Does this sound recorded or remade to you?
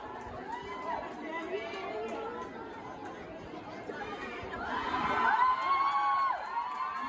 recorded